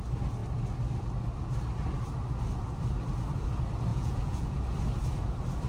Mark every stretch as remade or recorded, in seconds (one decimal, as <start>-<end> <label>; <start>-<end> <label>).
0.0-3.9 recorded; 3.9-4.6 remade; 4.6-5.7 recorded